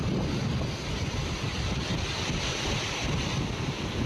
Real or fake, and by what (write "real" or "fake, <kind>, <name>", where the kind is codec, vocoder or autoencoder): real